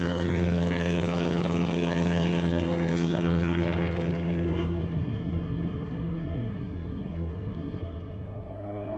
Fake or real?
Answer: fake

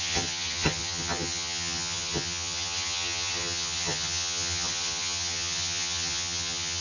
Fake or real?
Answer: fake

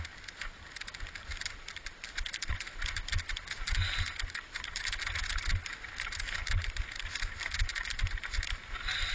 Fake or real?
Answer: real